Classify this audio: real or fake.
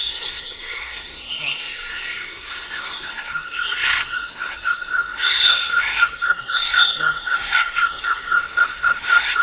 fake